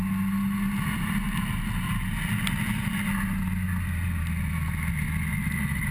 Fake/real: real